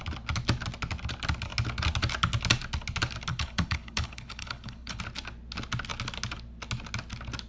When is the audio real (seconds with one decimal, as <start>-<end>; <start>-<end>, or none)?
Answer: 0.0-3.3; 5.0-7.5